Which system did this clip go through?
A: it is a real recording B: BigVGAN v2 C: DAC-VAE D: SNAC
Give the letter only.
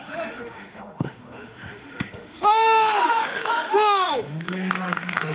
C